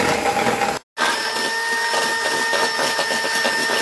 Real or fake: real